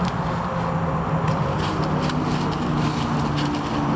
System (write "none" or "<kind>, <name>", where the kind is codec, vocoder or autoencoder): none